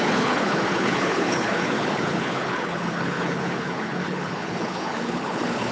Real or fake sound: fake